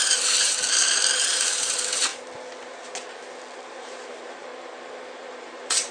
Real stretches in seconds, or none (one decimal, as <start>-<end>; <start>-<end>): 2.1-3.7; 4.5-5.4